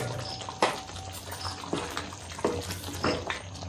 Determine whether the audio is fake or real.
real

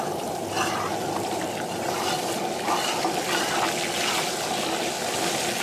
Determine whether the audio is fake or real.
real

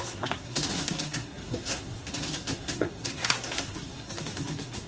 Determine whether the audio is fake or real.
fake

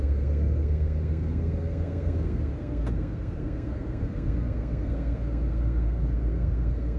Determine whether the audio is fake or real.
fake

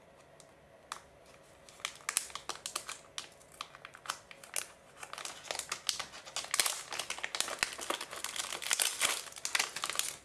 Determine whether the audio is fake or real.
real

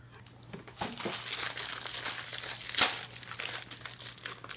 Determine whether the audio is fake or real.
real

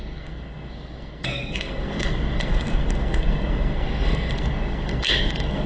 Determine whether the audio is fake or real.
fake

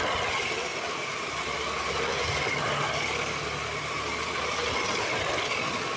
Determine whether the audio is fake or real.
real